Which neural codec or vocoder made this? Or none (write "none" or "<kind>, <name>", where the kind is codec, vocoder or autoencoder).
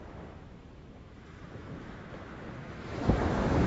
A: autoencoder, DAC-VAE